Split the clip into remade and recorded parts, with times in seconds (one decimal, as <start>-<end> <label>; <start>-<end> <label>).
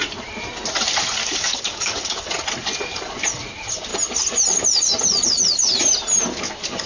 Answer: 0.0-1.2 recorded; 1.2-2.3 remade; 2.3-6.9 recorded